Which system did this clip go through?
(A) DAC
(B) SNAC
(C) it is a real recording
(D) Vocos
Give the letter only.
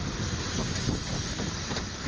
C